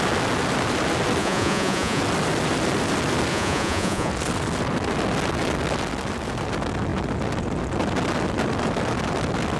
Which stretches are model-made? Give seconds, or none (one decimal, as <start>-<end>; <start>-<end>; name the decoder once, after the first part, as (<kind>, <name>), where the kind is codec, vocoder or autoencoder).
1.2-2.0 (vocoder, Vocos); 3.3-4.1